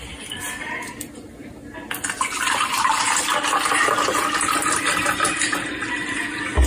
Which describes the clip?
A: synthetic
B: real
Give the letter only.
A